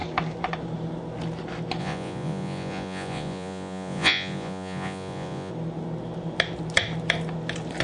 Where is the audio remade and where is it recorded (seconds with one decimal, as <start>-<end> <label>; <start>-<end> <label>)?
0.0-1.8 recorded; 1.8-5.5 remade; 5.5-7.8 recorded